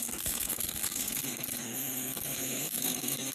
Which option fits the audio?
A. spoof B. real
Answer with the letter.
A